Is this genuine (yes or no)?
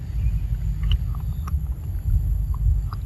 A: yes